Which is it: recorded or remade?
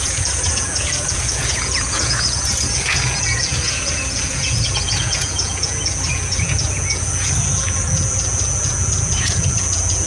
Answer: remade